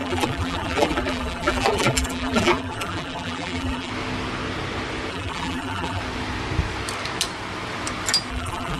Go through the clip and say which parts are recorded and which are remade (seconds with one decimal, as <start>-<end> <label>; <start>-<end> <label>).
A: 0.0-3.9 remade; 3.9-5.1 recorded; 5.1-6.0 remade; 6.0-8.3 recorded; 8.3-8.8 remade